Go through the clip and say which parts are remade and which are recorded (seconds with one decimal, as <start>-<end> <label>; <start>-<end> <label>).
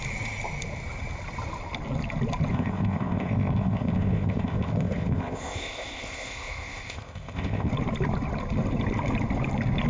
0.0-2.5 recorded; 2.5-7.7 remade; 7.7-9.9 recorded